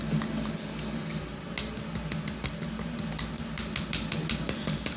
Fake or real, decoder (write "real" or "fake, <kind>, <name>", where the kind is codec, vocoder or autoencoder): real